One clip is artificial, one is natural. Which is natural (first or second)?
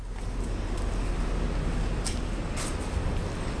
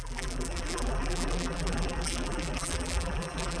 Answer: first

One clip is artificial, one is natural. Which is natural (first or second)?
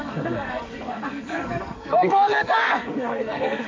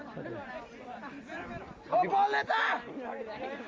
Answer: second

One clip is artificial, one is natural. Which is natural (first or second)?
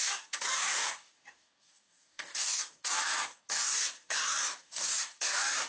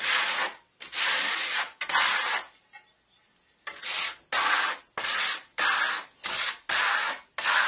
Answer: second